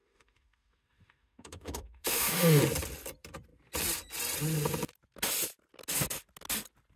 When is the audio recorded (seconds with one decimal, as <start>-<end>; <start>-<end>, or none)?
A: 2.6-7.0